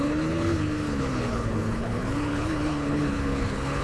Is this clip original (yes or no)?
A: no